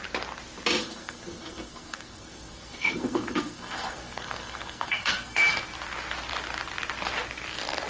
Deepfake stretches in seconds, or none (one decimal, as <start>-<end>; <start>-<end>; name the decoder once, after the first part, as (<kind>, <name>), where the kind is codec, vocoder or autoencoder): 0.8-5.5 (codec, SNAC)